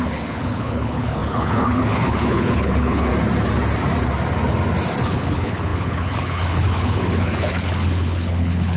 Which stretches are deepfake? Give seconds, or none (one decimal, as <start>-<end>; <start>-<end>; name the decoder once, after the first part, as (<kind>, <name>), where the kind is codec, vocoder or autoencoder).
0.0-3.1 (codec, HILCodec); 5.0-8.8